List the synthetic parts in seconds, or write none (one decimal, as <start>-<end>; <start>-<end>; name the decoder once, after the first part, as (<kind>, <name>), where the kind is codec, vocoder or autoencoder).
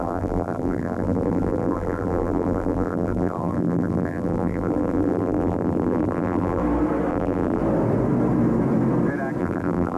0.0-6.6 (vocoder, BigVGAN v2); 7.1-7.6; 9.4-10.0